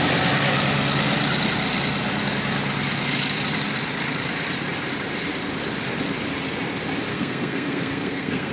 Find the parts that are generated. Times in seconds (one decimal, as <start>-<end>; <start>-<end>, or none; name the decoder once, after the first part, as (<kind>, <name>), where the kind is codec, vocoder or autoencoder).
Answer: 7.1-8.5 (codec, SNAC)